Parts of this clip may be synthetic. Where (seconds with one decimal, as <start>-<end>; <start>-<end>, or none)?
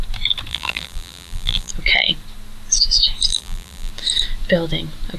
0.5-1.7; 3.3-3.9